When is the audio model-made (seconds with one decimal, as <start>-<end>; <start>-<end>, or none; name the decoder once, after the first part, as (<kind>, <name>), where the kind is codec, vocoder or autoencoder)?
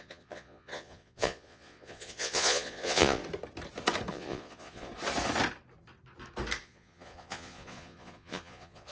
0.0-3.2 (vocoder, Vocos); 4.1-4.9; 6.6-8.9